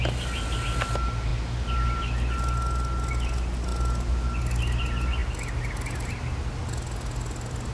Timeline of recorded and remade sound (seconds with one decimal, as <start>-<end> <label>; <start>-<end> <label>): 0.0-7.7 recorded